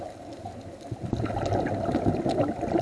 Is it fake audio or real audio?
real